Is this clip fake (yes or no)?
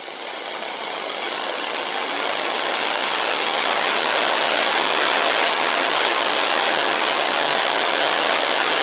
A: yes